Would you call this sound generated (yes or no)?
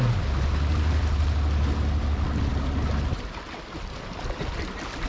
no